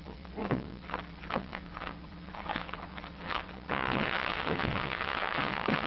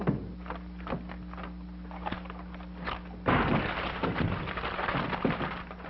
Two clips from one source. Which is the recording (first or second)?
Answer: second